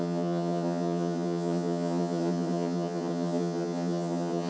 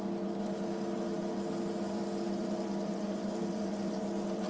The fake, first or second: first